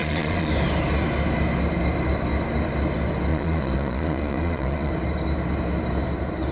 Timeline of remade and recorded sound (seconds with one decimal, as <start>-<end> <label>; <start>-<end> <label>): 0.0-0.5 remade; 0.5-3.3 recorded; 3.3-4.9 remade; 4.9-6.5 recorded